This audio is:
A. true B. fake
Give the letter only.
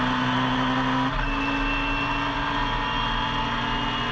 A